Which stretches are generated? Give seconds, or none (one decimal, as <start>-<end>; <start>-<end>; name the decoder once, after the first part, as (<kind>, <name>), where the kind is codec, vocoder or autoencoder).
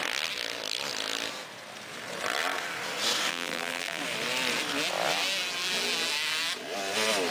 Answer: 3.3-4.0 (vocoder, BigVGAN v2)